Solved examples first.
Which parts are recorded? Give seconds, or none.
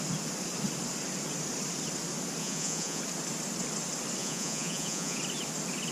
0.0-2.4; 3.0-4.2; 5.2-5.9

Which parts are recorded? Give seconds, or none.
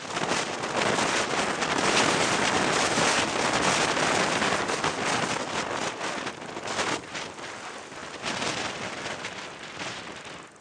0.0-10.6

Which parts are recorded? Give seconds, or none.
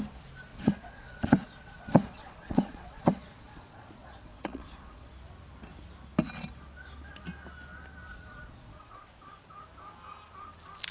0.0-0.5; 5.1-8.1; 9.0-10.9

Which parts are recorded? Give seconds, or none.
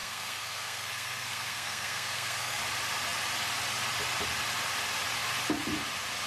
2.6-6.3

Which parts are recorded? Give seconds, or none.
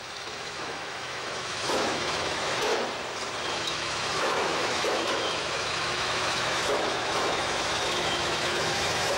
2.7-3.5